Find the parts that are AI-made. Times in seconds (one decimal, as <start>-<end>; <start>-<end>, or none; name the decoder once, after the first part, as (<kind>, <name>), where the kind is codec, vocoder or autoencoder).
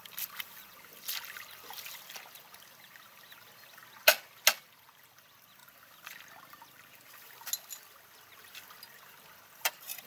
0.0-3.8 (vocoder, BigVGAN v2); 4.8-5.6; 9.0-10.1